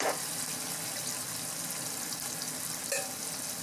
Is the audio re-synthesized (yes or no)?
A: no